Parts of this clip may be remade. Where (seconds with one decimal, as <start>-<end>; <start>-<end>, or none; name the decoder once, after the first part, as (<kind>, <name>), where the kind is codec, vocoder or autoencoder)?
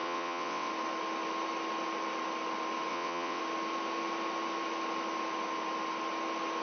0.0-0.7 (vocoder, WaveNeXt); 2.9-3.4